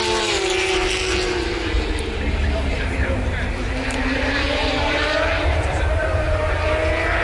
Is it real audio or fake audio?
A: fake